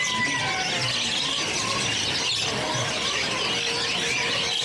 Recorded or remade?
recorded